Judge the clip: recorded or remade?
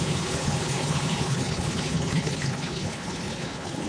remade